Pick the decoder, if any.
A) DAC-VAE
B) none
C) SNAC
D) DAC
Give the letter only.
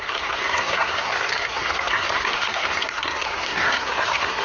C